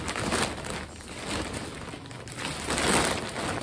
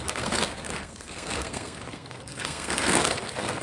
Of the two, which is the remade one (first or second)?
second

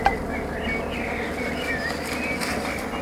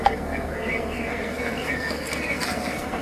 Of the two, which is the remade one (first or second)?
second